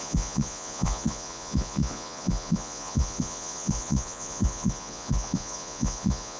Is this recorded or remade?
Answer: remade